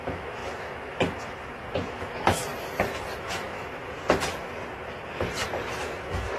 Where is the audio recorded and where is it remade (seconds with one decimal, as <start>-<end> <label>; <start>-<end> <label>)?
0.0-2.4 remade; 2.4-3.2 recorded; 3.2-3.8 remade; 3.8-5.8 recorded; 5.8-6.4 remade